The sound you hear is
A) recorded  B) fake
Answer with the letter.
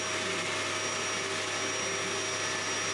A